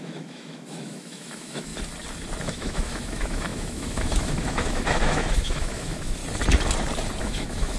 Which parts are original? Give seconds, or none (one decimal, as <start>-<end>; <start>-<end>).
1.7-2.4; 6.2-7.2